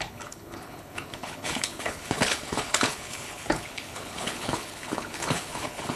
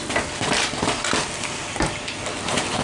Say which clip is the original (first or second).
second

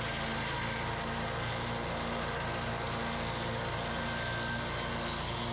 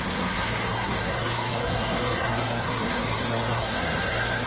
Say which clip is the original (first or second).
first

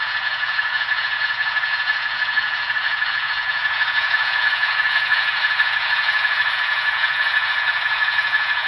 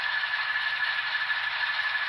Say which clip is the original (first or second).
second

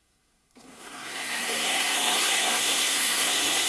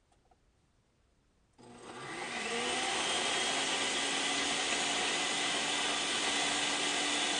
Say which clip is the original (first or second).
second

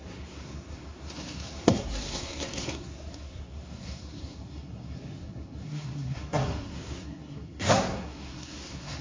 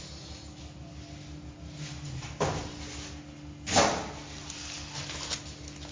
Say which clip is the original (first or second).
second